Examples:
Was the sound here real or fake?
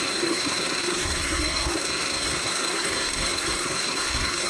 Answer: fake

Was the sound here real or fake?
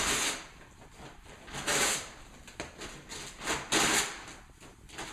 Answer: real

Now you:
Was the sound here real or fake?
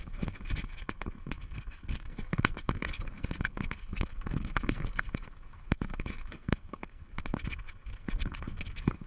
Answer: fake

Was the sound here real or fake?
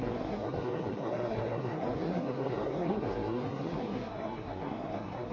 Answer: fake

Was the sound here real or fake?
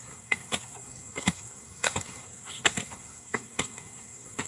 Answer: fake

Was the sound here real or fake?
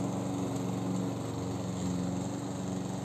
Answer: real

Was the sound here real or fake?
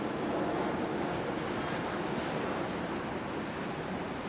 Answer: real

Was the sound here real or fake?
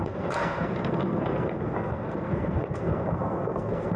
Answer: fake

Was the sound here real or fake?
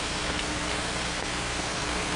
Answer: fake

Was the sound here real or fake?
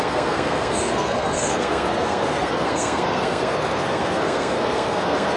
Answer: fake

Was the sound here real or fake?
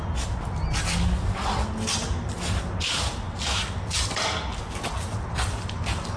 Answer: real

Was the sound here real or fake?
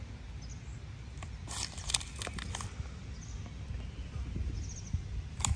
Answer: real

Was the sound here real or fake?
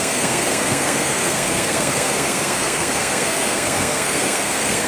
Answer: fake